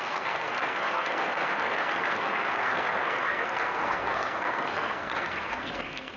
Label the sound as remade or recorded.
remade